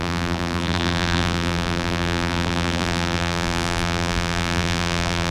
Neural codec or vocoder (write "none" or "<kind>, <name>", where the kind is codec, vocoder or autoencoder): vocoder, BigVGAN v2